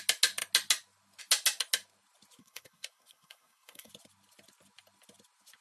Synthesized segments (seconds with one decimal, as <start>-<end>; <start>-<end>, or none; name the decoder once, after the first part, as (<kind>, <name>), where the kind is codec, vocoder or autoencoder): 2.4-3.9 (codec, SNAC)